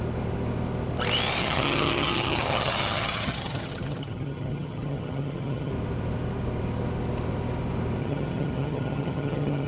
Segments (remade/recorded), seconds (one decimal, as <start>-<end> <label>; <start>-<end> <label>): 0.0-1.4 recorded; 1.4-5.7 remade; 5.7-8.0 recorded; 8.0-9.7 remade